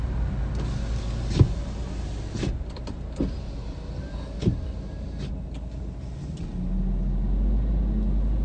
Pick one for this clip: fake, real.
real